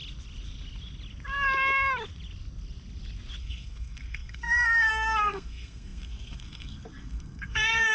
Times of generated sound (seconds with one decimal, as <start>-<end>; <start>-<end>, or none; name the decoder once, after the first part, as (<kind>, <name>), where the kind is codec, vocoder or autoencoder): 3.4-7.9 (codec, SNAC)